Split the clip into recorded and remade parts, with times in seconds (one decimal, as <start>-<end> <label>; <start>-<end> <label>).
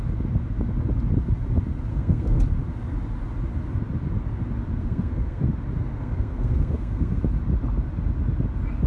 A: 0.0-1.9 recorded; 1.9-2.4 remade; 2.4-4.8 recorded; 4.8-5.4 remade; 5.4-6.0 recorded; 6.0-7.2 remade; 7.2-8.9 recorded